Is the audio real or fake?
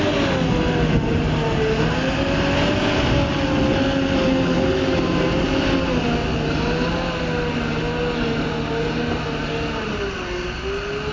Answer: real